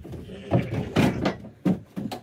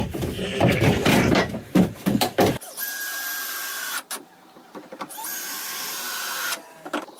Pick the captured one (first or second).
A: first